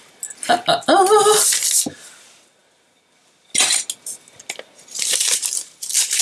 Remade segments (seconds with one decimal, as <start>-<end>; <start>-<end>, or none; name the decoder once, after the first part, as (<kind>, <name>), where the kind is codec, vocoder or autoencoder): none